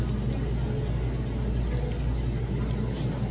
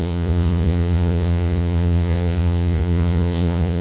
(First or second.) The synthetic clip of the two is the second